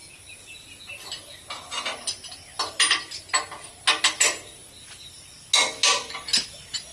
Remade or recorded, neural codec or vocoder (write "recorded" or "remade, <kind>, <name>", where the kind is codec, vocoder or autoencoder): recorded